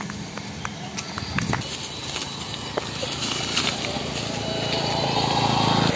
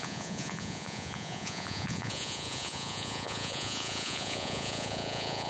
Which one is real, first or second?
first